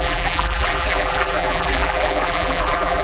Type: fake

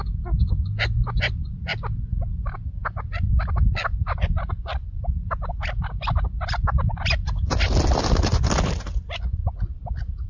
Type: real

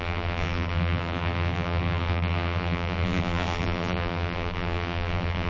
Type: fake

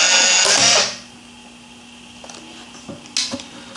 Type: real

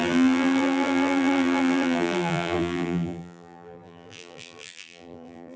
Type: fake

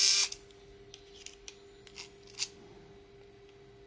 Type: real